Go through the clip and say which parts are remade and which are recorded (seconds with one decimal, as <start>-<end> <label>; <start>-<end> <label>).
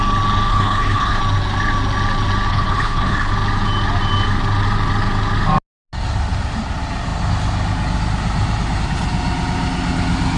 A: 0.0-0.5 recorded; 0.5-1.2 remade; 1.2-2.5 recorded; 2.5-3.3 remade; 3.3-10.4 recorded